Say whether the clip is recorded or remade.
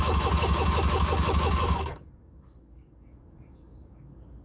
remade